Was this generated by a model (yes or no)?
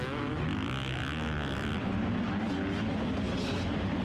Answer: no